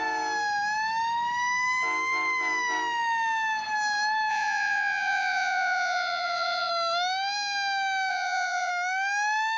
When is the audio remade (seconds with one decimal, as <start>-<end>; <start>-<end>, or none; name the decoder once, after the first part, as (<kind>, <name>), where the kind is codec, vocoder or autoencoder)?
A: 4.3-6.7 (vocoder, Vocos); 8.1-8.7